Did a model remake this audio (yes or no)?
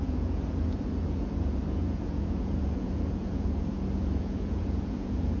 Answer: yes